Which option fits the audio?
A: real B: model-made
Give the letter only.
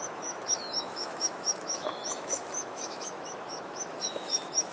B